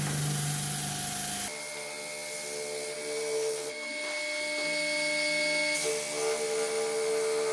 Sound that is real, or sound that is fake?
real